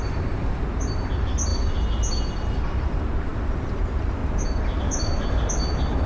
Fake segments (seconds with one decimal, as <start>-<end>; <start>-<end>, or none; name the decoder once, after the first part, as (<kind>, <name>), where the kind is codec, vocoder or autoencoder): none